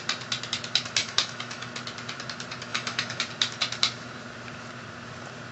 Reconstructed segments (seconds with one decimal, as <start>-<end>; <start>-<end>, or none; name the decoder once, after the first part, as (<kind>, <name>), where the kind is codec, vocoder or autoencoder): 1.0-1.7 (autoencoder, DAC-VAE); 2.7-3.2